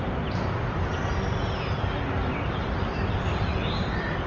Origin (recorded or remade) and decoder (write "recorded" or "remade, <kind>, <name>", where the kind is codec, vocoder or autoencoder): remade, vocoder, BigVGAN v2